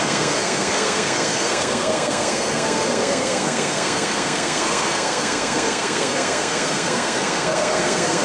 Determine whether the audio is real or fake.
fake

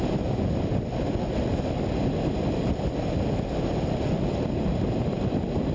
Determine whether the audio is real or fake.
real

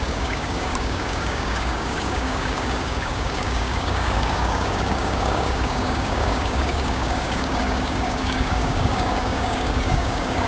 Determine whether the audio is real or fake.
fake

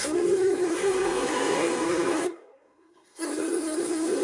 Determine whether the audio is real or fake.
fake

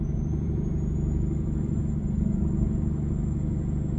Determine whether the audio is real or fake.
fake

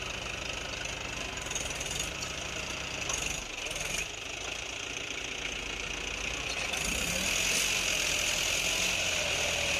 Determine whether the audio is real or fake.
real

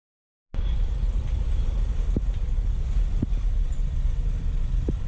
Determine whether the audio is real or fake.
real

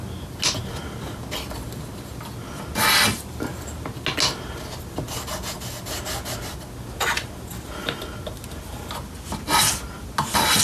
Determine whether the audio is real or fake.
real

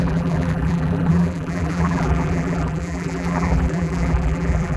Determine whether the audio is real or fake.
fake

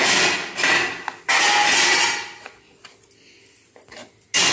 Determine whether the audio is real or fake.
real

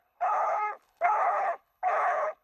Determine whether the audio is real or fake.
fake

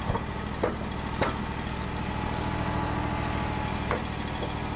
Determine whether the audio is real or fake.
real